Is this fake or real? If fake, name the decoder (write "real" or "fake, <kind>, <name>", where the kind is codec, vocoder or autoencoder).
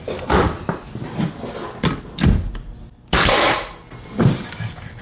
real